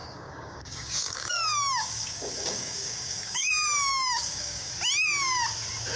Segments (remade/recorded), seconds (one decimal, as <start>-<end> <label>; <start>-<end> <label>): 0.0-3.5 remade; 3.5-3.9 recorded; 3.9-4.7 remade; 4.7-6.0 recorded